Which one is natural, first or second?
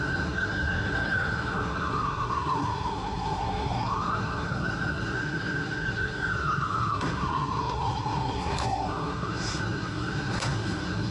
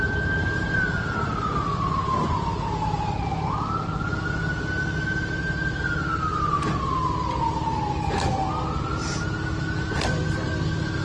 second